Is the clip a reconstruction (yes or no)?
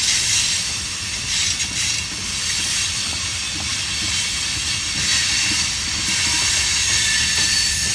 no